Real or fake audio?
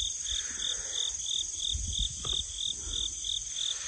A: real